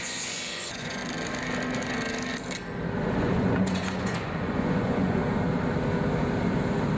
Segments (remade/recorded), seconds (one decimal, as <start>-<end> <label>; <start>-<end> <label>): 0.0-1.0 remade; 1.0-3.2 recorded; 3.2-5.2 remade; 5.2-7.0 recorded